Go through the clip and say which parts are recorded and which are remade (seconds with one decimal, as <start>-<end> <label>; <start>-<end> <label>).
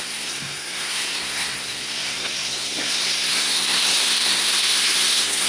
0.0-5.5 remade